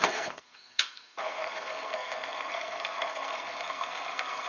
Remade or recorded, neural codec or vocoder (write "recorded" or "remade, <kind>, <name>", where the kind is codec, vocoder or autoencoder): remade, codec, SNAC